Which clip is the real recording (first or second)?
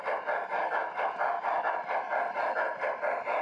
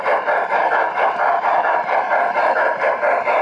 first